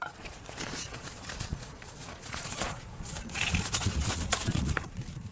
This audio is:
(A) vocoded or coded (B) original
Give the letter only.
A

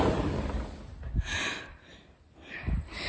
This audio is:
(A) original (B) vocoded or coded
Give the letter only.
A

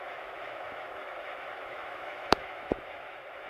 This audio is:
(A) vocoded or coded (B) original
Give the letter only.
A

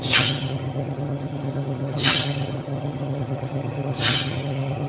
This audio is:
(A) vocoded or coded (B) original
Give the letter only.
A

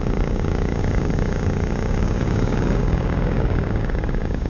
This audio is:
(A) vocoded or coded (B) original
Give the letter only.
A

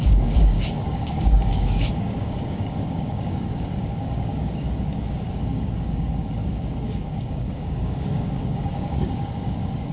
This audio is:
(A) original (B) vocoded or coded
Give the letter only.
B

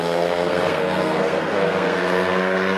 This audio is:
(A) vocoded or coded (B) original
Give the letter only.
A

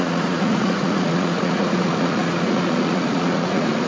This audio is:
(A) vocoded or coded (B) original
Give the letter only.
A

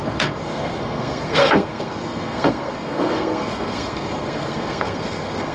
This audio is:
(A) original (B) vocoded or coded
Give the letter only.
B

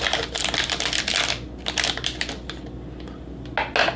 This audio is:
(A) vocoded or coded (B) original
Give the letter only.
B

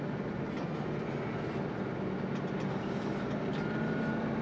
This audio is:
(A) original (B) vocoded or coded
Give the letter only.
A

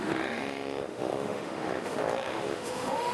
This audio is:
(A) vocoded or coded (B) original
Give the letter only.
A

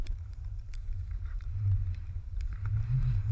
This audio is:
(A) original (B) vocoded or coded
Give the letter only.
B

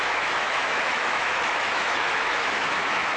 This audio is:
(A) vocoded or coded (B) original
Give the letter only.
A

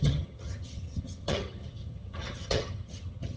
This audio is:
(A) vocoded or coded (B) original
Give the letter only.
A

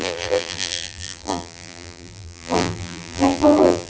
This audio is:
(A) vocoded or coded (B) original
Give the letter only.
A